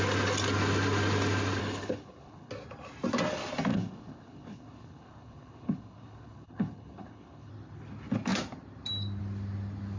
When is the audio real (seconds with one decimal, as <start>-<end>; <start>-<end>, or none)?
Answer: 0.0-1.6; 2.5-3.7; 7.5-10.0